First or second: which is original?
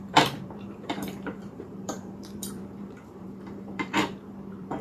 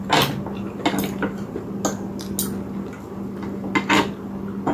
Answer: second